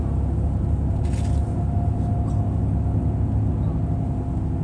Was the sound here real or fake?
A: real